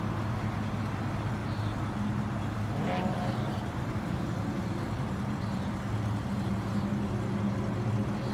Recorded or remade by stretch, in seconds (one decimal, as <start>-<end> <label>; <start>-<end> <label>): 0.0-8.3 recorded